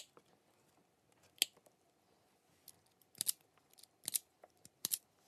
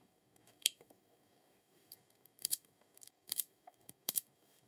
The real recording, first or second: first